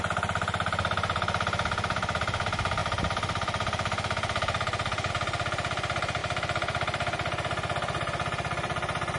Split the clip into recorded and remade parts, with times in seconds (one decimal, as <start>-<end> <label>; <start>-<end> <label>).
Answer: 0.0-2.8 recorded; 2.8-5.1 remade; 5.1-6.2 recorded; 6.2-9.2 remade